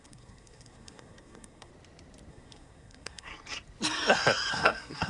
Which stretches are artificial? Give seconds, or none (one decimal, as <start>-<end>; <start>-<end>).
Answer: 0.0-1.7; 2.3-3.3; 4.5-5.1